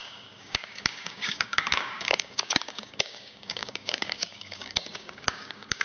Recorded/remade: remade